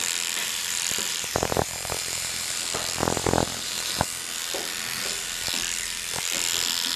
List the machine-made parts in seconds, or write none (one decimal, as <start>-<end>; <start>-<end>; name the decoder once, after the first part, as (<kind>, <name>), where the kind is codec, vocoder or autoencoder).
0.4-2.6 (vocoder, BigVGAN v2); 3.0-4.0